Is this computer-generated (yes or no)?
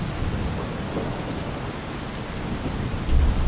no